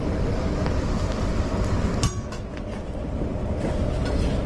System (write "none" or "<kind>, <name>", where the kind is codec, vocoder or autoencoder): none